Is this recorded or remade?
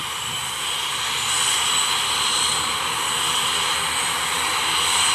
recorded